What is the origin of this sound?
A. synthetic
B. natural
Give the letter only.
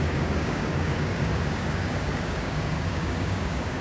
A